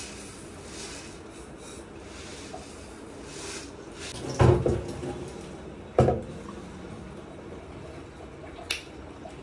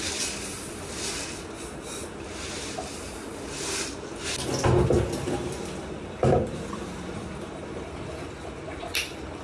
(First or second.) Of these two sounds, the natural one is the first